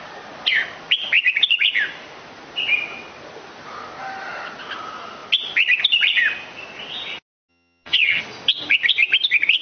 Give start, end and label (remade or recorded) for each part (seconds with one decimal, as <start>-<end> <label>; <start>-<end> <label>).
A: 0.0-7.5 recorded; 7.5-8.2 remade; 8.2-9.6 recorded